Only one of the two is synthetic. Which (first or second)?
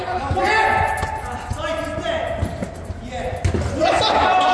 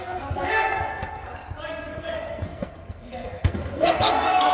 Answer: second